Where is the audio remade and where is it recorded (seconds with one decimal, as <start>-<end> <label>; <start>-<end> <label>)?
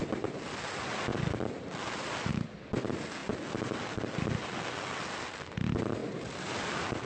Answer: 0.0-1.1 recorded; 1.1-2.3 remade; 2.3-6.0 recorded; 6.0-7.1 remade